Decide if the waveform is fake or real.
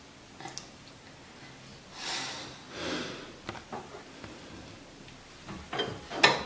real